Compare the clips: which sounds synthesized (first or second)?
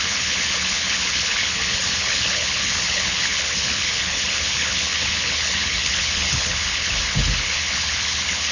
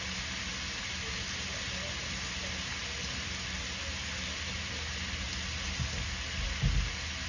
first